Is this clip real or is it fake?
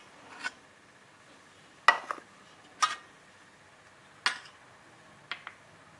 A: real